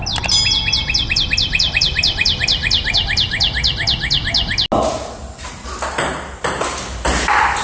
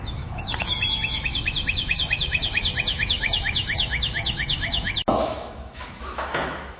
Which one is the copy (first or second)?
second